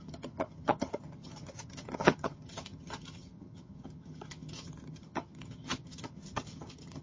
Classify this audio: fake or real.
fake